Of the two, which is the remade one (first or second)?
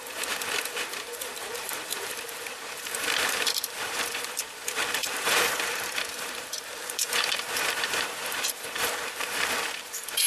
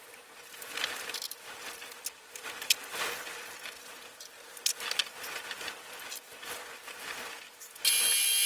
first